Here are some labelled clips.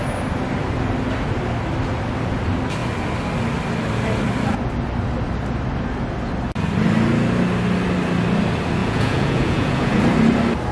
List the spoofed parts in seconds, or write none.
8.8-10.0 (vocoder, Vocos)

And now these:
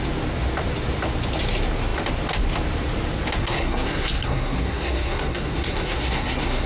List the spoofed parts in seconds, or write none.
3.4-6.7 (codec, SNAC)

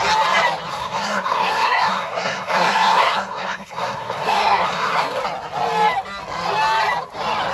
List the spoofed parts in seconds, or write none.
0.7-5.2 (codec, SNAC)

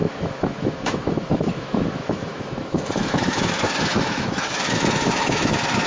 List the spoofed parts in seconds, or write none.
0.0-5.9 (autoencoder, DAC-VAE)

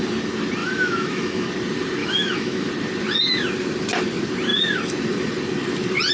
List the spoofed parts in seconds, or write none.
0.6-1.5 (autoencoder, DAC-VAE); 2.0-2.7

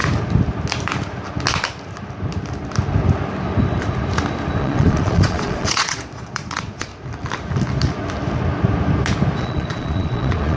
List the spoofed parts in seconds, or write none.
4.6-6.9 (vocoder, Vocos); 9.4-10.6